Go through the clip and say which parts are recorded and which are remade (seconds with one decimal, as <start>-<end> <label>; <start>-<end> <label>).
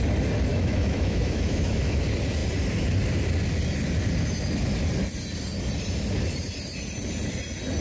0.0-0.5 recorded; 0.5-2.0 remade; 2.0-7.8 recorded